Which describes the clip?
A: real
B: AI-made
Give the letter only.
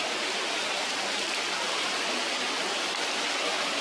A